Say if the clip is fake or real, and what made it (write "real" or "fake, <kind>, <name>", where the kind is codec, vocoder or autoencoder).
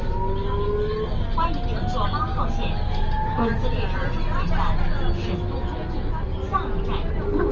real